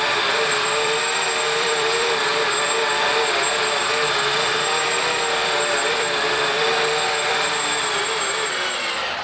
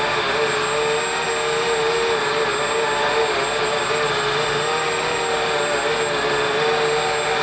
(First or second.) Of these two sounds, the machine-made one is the first